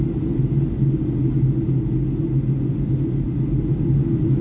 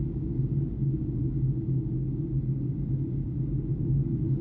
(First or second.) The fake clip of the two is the second